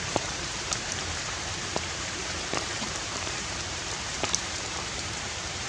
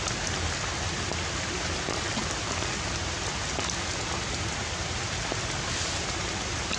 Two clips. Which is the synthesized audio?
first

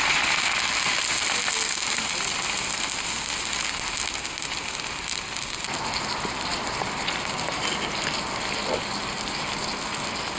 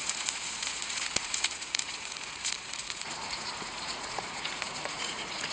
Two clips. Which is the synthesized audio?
second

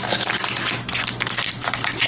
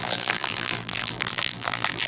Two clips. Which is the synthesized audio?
second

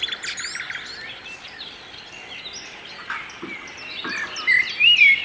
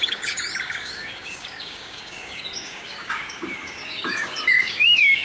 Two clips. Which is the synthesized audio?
second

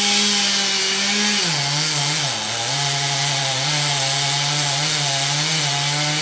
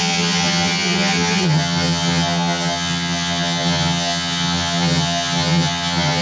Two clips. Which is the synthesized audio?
second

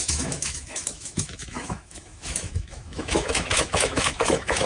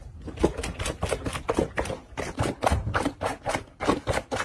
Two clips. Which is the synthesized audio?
first